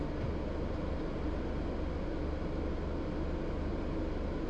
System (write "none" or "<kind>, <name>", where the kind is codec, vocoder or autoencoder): none